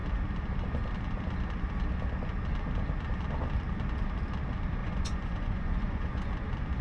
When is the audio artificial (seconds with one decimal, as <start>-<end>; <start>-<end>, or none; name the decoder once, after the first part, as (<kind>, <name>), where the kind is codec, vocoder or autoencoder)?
4.8-6.3 (vocoder, Vocos)